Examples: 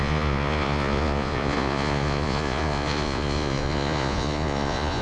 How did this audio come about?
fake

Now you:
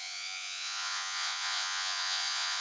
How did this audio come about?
fake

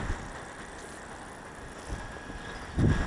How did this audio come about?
real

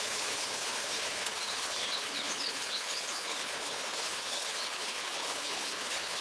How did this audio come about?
fake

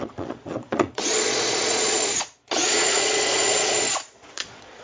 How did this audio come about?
fake